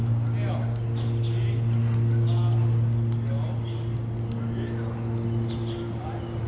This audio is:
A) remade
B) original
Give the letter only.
B